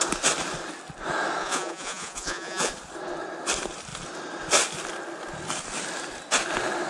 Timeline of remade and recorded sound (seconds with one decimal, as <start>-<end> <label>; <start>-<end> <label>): 0.0-1.4 recorded; 1.4-2.7 remade; 2.7-6.9 recorded